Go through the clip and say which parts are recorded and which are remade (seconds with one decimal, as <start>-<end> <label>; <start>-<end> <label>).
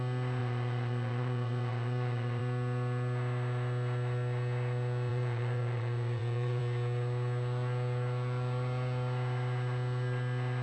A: 0.0-0.4 recorded; 0.4-2.4 remade; 2.4-5.1 recorded; 5.1-6.6 remade; 6.6-10.6 recorded